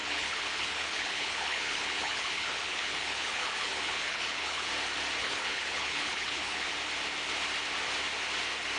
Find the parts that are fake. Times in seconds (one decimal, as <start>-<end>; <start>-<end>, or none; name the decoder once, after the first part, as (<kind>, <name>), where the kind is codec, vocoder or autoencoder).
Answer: 0.0-4.7 (codec, HILCodec); 5.2-6.7